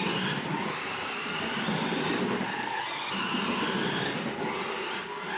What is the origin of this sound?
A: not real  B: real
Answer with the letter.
B